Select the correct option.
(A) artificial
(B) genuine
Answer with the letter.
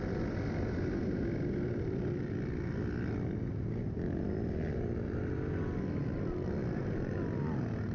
B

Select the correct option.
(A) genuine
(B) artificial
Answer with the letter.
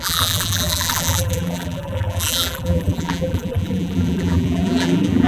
B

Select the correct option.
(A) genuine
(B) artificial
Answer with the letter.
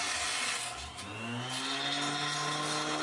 A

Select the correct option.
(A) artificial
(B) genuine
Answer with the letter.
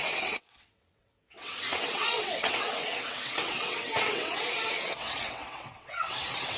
A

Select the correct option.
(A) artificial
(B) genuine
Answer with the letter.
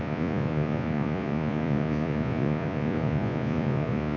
A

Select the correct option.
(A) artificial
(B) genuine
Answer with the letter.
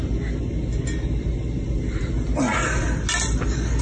B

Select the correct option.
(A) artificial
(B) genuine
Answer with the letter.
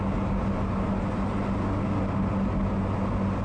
B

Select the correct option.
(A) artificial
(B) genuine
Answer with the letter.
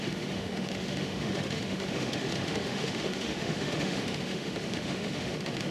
A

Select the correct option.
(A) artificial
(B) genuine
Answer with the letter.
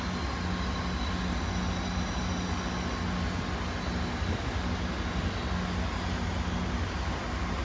B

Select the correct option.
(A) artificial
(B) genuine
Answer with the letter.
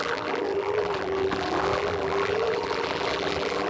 A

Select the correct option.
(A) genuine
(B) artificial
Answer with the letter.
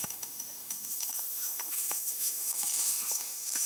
B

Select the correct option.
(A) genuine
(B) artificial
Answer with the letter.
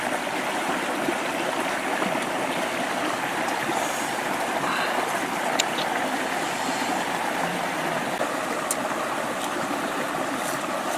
A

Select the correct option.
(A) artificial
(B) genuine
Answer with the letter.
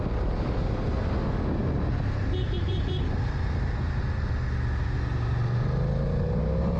B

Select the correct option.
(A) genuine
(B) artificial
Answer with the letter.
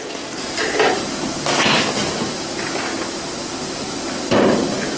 A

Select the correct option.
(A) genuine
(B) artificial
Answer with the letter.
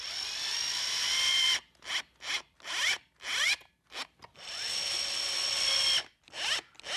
A